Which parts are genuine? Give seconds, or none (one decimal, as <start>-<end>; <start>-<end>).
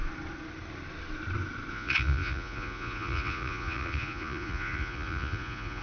0.0-1.7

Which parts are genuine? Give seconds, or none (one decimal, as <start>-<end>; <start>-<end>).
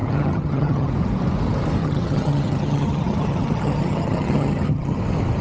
0.9-1.8; 5.0-5.4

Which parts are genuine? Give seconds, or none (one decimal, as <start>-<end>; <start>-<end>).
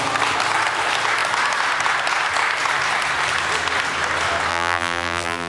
0.0-4.5